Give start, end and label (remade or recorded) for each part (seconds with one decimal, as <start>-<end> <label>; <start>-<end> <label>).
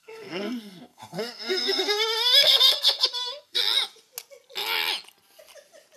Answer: 0.0-3.6 remade; 3.6-6.0 recorded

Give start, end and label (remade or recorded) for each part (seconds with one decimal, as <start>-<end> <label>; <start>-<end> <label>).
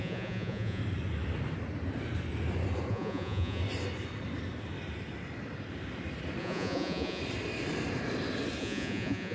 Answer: 0.0-0.8 remade; 0.8-2.9 recorded; 2.9-3.6 remade; 3.6-6.4 recorded; 6.4-7.2 remade; 7.2-8.6 recorded; 8.6-9.3 remade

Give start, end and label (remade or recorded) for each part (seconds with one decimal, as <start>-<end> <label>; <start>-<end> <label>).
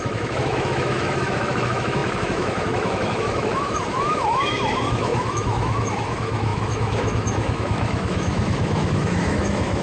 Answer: 0.0-9.8 remade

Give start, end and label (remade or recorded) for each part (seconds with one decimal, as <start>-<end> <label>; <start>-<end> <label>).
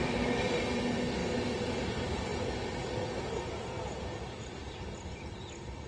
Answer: 0.0-5.9 recorded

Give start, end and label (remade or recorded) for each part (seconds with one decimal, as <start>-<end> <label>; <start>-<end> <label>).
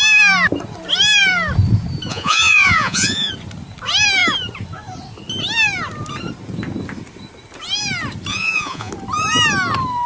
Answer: 0.0-2.1 recorded; 2.1-3.3 remade; 3.3-8.3 recorded; 8.3-8.9 remade; 8.9-10.1 recorded